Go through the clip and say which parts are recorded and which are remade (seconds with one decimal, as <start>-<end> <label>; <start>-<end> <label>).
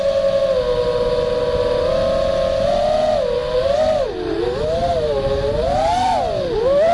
0.0-6.9 recorded